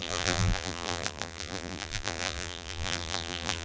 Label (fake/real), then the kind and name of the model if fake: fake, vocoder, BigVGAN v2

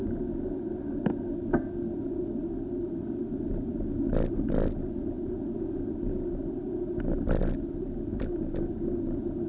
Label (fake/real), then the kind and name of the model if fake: real